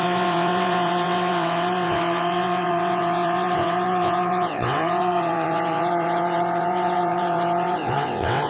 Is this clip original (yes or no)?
no